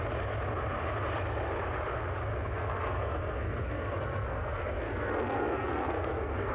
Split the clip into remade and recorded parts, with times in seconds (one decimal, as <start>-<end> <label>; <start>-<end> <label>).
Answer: 0.0-2.3 recorded; 2.3-6.5 remade